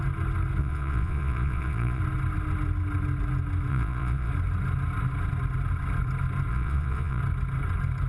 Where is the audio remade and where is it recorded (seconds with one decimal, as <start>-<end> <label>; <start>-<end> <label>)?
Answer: 0.0-0.6 recorded; 0.6-2.0 remade; 2.0-3.7 recorded; 3.7-4.3 remade; 4.3-6.5 recorded; 6.5-7.2 remade; 7.2-8.1 recorded